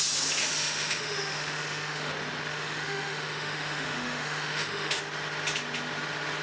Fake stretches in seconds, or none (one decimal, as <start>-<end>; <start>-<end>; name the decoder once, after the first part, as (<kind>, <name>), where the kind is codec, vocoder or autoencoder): 0.4-2.1 (autoencoder, DAC-VAE); 2.5-5.0